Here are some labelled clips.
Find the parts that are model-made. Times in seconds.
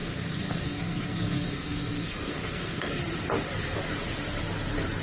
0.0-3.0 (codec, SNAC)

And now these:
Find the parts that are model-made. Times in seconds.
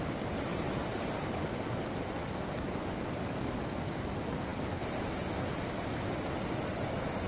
0.5-3.9 (vocoder, BigVGAN v2)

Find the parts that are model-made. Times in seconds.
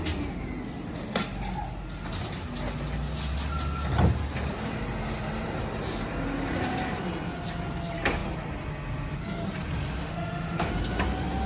10.0-10.7 (autoencoder, DAC-VAE)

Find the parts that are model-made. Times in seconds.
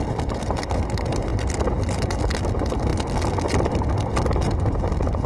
none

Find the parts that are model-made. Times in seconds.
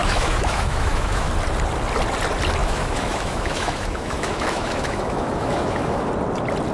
0.0-1.3 (autoencoder, DAC-VAE); 2.6-6.1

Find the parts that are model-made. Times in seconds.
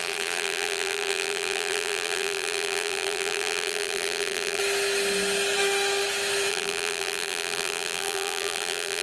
0.0-4.6 (vocoder, BigVGAN v2); 6.5-9.0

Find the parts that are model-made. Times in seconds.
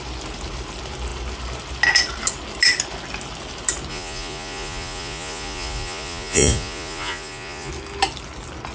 3.9-7.7 (vocoder, Vocos)